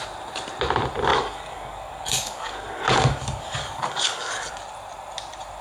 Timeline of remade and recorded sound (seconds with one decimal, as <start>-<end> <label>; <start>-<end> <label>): 0.0-1.1 recorded; 1.1-4.5 remade; 4.5-5.6 recorded